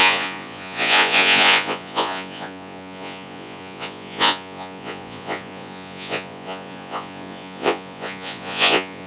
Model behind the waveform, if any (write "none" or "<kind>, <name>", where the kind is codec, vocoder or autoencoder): vocoder, Vocos